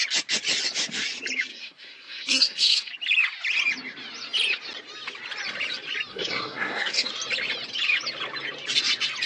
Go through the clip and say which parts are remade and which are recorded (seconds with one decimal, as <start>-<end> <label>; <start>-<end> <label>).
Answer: 0.0-1.5 recorded; 1.5-2.9 remade; 2.9-6.1 recorded; 6.1-7.1 remade; 7.1-9.3 recorded